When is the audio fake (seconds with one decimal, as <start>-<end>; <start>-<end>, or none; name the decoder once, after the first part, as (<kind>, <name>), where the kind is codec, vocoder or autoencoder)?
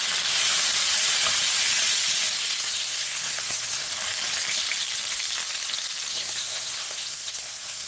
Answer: 2.4-3.9 (codec, SNAC); 6.1-7.9